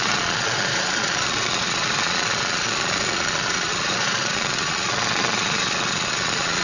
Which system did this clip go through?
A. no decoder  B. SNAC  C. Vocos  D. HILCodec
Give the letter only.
C